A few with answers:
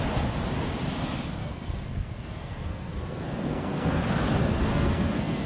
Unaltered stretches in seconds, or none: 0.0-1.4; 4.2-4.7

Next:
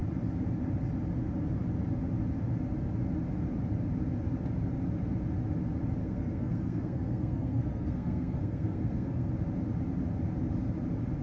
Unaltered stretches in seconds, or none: 0.0-6.0; 9.3-11.2

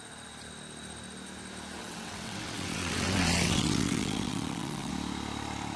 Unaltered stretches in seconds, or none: 0.0-1.8; 4.9-5.8

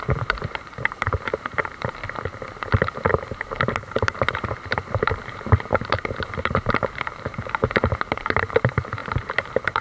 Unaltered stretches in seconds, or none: 1.7-3.7

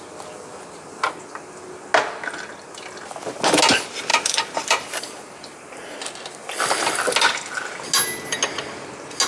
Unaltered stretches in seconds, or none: 0.0-4.1; 6.1-9.3

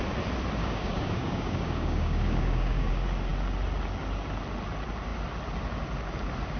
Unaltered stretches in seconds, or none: 0.0-0.6; 2.9-6.6

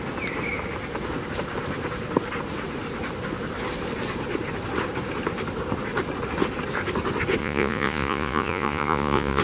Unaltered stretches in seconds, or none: 0.0-7.4